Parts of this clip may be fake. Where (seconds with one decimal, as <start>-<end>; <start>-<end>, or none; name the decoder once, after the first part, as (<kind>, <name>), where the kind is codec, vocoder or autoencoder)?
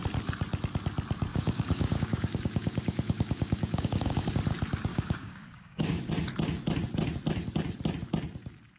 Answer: 1.3-4.3 (codec, DAC); 4.9-6.1